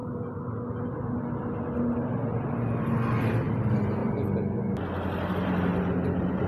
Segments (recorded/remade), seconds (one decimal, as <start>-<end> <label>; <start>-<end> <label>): 0.0-6.5 recorded

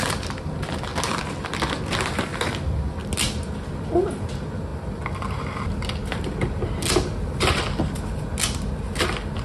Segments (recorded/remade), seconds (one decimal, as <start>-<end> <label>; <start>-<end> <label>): 0.0-9.4 recorded

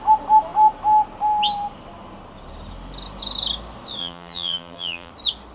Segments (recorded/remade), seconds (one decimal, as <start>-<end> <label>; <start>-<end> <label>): 0.0-4.0 recorded; 4.0-5.1 remade; 5.1-5.5 recorded

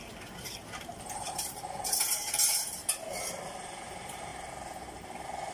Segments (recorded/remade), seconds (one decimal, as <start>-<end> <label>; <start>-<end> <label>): 0.0-2.8 remade; 2.8-3.4 recorded; 3.4-4.3 remade; 4.3-5.5 recorded

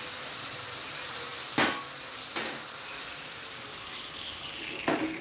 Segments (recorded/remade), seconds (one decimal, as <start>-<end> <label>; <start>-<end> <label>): 0.0-1.3 remade; 1.3-3.1 recorded; 3.1-5.2 remade

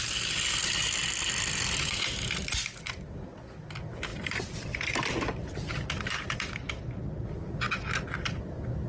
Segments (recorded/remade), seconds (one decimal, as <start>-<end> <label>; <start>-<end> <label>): 0.0-4.1 recorded; 4.1-5.8 remade; 5.8-8.9 recorded

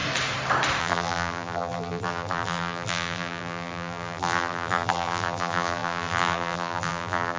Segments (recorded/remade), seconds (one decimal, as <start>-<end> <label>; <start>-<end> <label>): 0.0-0.8 recorded; 0.8-7.4 remade

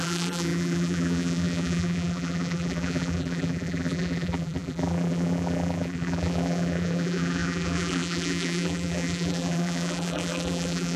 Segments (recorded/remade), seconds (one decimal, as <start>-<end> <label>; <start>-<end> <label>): 0.0-11.0 remade